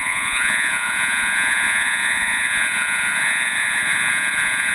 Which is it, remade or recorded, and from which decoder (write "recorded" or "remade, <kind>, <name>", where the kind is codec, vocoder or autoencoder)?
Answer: remade, vocoder, Vocos